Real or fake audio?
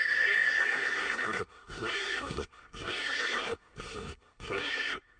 fake